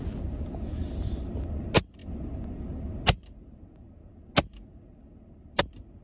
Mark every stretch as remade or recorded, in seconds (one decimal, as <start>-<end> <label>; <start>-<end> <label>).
0.0-6.0 recorded